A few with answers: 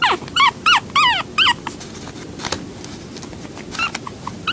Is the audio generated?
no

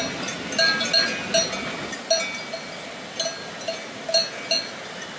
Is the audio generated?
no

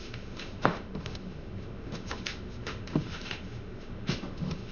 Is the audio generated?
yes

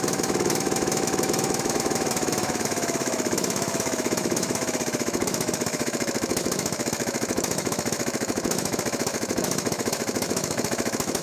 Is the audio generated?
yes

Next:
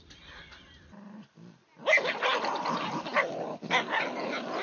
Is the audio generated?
no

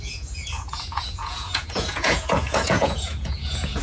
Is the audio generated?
yes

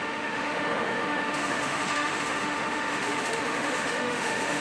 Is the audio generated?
yes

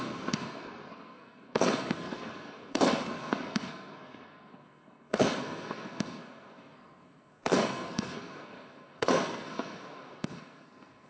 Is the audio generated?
yes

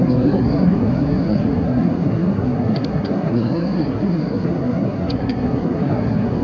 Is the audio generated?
yes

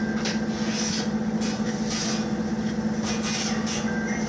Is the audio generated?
no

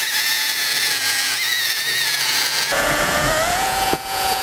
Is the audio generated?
yes